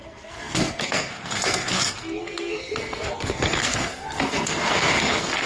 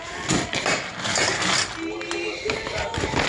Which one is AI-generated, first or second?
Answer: first